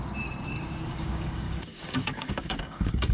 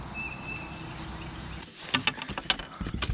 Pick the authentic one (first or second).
second